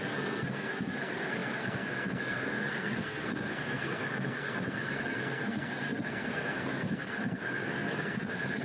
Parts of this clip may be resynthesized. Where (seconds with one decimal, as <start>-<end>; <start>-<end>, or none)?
0.0-8.6